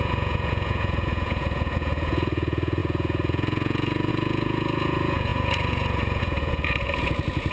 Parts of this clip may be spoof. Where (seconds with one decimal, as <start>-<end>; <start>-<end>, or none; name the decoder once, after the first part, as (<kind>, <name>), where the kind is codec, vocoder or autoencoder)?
0.0-7.5 (vocoder, Vocos)